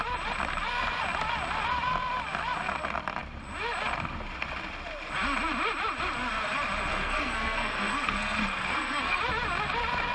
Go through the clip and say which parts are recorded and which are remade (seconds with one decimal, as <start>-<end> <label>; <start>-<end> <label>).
0.0-6.9 recorded; 6.9-9.2 remade; 9.2-10.1 recorded